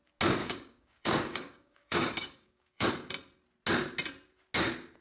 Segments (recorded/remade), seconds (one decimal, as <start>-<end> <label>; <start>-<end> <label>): 0.0-0.4 recorded; 0.4-2.9 remade; 2.9-5.0 recorded